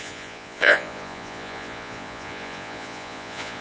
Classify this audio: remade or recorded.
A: remade